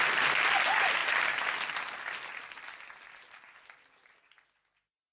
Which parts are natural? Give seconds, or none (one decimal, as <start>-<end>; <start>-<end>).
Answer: 0.0-5.1